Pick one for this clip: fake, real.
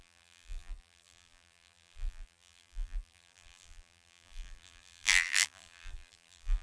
fake